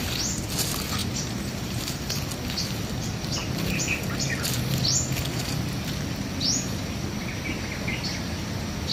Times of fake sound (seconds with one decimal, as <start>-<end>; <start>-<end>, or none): 1.0-2.1